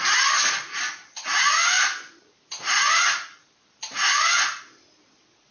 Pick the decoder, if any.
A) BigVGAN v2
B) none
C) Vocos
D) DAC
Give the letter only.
B